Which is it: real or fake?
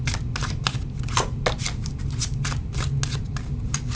real